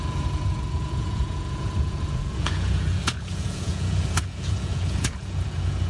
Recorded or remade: remade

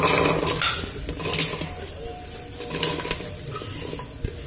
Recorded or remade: recorded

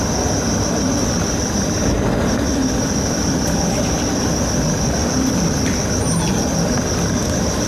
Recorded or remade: recorded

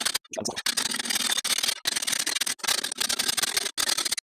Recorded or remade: recorded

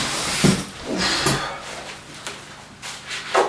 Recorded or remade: recorded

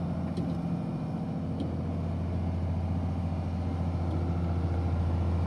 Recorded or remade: recorded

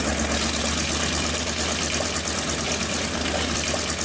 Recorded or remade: recorded